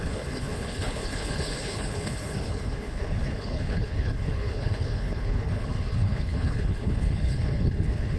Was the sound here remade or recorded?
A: remade